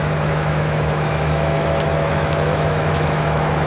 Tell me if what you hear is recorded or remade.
remade